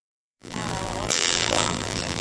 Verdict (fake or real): fake